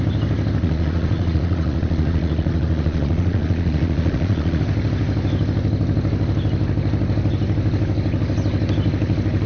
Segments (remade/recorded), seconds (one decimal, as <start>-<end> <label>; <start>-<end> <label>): 0.0-0.6 recorded; 0.6-4.6 remade; 4.6-9.5 recorded